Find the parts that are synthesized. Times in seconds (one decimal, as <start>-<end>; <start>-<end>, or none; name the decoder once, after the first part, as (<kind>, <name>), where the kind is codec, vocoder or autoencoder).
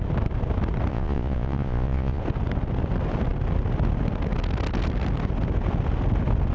0.9-2.2 (vocoder, Vocos)